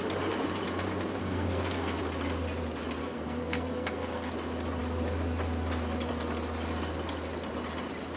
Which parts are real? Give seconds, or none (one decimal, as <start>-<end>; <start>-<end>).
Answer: 0.0-1.2; 2.0-3.0; 4.3-8.2